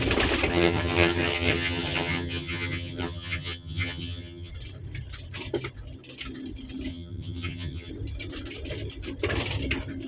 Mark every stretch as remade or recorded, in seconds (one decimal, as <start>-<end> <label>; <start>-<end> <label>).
0.0-0.5 recorded; 0.5-4.5 remade; 4.5-6.9 recorded; 6.9-7.9 remade; 7.9-10.1 recorded